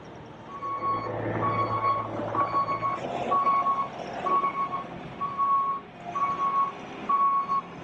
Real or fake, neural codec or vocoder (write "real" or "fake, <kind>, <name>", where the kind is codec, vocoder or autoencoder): real